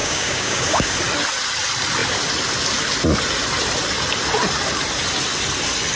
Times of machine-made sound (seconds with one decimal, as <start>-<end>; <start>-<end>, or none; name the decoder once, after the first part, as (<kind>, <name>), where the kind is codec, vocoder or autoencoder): 0.0-0.9 (codec, DAC)